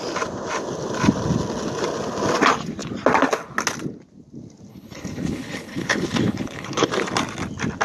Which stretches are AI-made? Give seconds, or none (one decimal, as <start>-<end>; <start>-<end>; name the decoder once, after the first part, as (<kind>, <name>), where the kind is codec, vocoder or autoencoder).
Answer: 4.7-6.9 (codec, HILCodec)